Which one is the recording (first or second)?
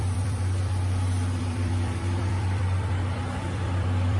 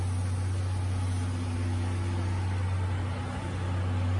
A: second